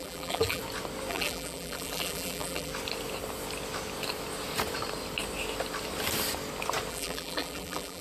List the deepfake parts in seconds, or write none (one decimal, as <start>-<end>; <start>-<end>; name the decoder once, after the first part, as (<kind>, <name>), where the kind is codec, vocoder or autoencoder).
0.0-0.6 (vocoder, BigVGAN v2); 1.1-2.7; 6.9-8.0